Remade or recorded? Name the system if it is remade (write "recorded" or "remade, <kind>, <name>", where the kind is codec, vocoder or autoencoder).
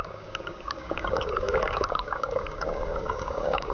remade, codec, DAC